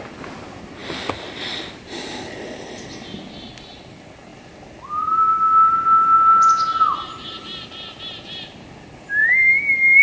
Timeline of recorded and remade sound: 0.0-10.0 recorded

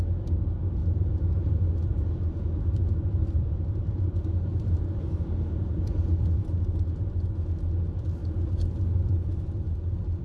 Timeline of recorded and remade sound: 0.0-0.8 recorded; 0.8-1.5 remade; 1.5-1.9 recorded; 1.9-5.0 remade; 5.0-10.2 recorded

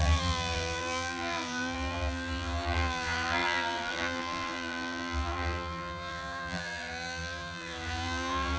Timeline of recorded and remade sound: 0.0-8.6 remade

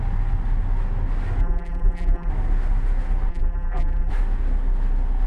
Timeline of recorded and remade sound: 0.0-1.4 recorded; 1.4-2.3 remade; 2.3-3.3 recorded; 3.3-4.1 remade; 4.1-5.3 recorded

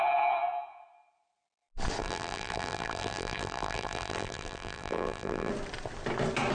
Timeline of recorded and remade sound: 0.0-2.0 recorded; 2.0-5.5 remade; 5.5-6.5 recorded

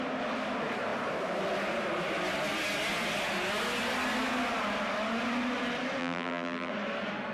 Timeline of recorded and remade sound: 0.0-6.0 recorded; 6.0-6.7 remade; 6.7-7.3 recorded

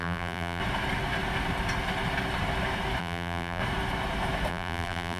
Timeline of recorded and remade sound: 0.0-0.6 remade; 0.6-3.0 recorded; 3.0-3.6 remade; 3.6-4.5 recorded; 4.5-5.2 remade